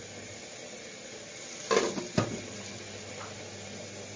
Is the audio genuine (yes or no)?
yes